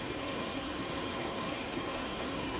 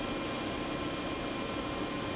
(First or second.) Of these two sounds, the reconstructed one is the first